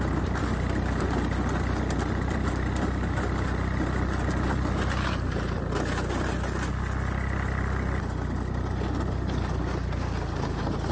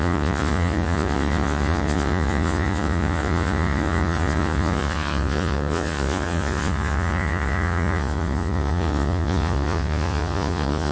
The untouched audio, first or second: first